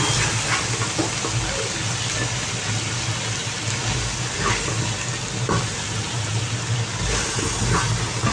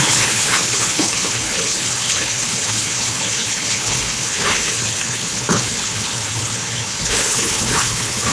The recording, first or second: first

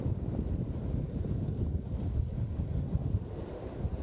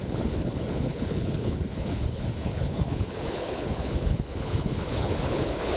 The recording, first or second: first